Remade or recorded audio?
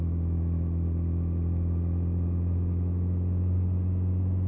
recorded